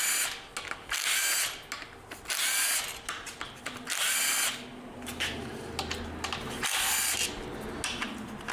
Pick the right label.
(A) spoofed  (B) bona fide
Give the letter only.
B